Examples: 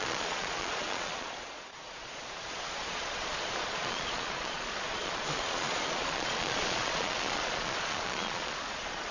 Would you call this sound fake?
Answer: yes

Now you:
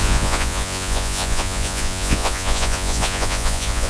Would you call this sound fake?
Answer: yes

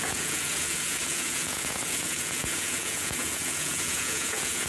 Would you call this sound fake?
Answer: yes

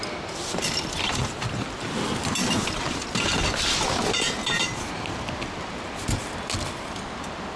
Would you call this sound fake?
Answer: no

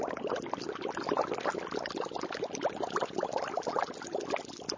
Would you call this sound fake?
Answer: no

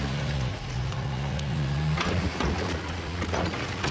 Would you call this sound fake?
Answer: yes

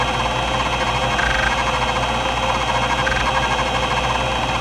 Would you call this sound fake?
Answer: no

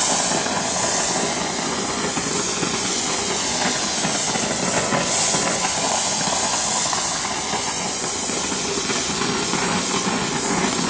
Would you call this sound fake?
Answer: yes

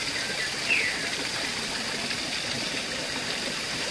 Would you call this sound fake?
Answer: no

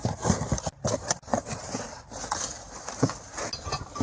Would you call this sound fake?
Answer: no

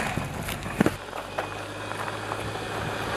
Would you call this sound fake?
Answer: no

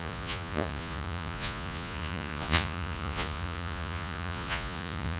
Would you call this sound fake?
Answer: yes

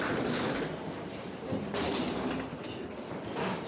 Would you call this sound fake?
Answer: no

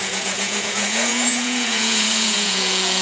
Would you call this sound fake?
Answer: yes